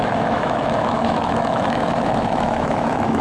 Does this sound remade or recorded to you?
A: remade